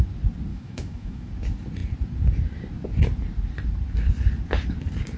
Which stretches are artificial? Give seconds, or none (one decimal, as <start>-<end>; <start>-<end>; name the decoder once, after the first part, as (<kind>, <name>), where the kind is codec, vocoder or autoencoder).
0.5-1.3 (autoencoder, DAC-VAE)